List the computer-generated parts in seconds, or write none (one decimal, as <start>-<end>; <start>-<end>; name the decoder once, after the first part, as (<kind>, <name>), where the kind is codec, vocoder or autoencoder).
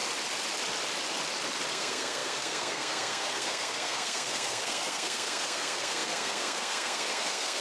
1.7-7.6 (codec, SNAC)